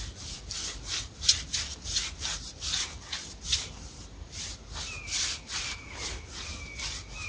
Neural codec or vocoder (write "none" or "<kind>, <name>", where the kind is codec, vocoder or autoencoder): none